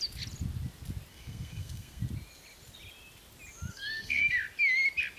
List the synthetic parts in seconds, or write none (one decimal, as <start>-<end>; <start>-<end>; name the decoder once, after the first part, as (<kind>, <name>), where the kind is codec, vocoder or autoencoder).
1.1-2.0 (codec, SNAC); 3.7-4.3